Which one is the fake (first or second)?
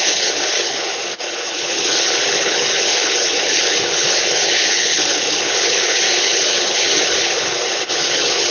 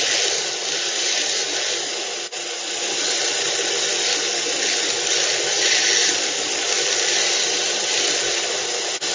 first